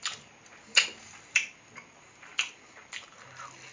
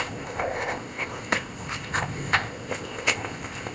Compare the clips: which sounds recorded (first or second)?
first